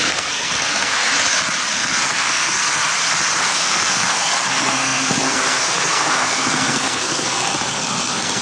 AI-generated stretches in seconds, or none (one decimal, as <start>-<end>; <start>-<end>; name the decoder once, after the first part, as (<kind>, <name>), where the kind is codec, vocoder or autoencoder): 0.0-1.1 (codec, SNAC); 1.7-2.8; 3.4-8.4